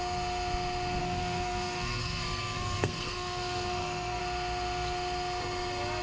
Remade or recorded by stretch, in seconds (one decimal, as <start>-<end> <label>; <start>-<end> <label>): 0.0-1.0 recorded; 1.0-4.2 remade; 4.2-6.0 recorded